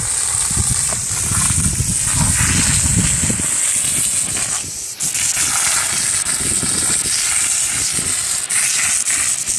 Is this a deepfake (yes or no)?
no